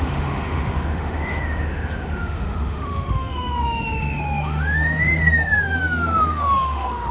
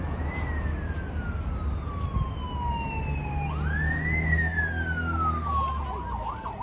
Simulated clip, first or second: first